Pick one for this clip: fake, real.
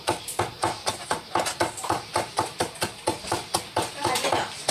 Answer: fake